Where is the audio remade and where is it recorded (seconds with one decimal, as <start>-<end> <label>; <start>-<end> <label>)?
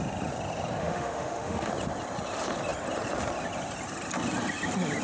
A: 0.0-0.8 recorded; 0.8-1.7 remade; 1.7-5.0 recorded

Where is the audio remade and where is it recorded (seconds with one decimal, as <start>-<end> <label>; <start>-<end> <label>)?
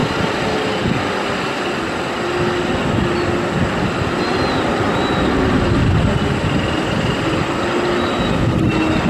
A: 0.0-9.1 recorded